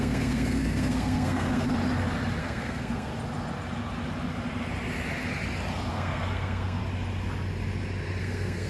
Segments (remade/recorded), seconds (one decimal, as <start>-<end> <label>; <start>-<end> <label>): 0.0-1.7 remade; 1.7-2.4 recorded; 2.4-3.1 remade; 3.1-5.9 recorded; 5.9-6.8 remade; 6.8-8.2 recorded; 8.2-8.7 remade